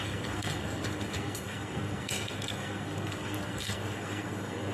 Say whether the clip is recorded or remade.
remade